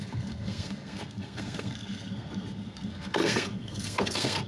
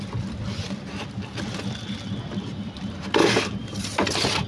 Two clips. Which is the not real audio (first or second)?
first